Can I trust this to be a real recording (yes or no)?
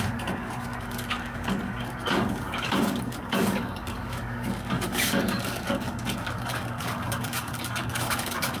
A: no